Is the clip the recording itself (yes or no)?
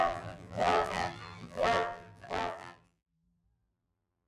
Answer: no